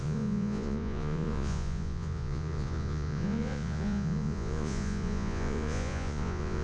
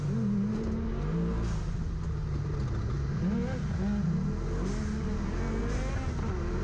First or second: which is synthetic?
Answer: first